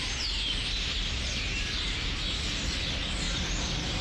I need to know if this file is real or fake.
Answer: real